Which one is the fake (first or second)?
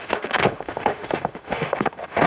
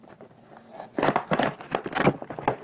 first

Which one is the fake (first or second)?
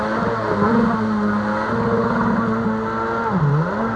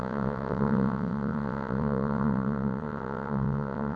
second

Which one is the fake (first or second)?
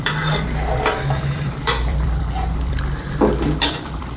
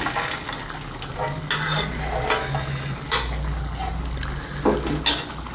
first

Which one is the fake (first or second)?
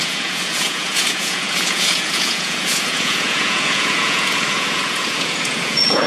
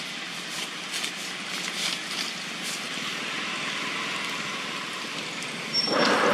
first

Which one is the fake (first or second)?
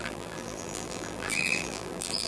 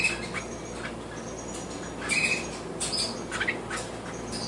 first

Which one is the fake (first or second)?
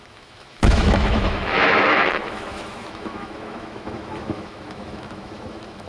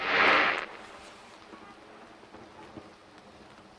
first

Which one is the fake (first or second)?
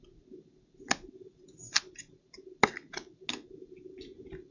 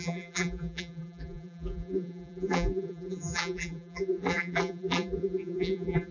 second